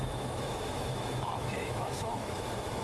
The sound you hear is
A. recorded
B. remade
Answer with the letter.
B